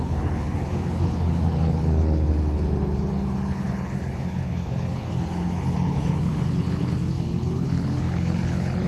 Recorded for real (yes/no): no